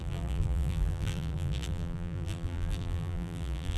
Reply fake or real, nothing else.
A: fake